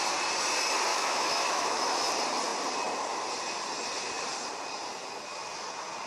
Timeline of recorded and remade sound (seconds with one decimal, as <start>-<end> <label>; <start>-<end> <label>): 0.0-0.9 recorded; 0.9-2.1 remade; 2.1-6.1 recorded